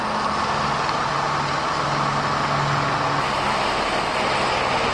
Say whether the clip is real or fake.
real